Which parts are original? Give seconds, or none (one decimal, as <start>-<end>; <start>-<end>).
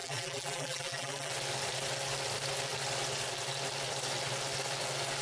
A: 1.3-5.2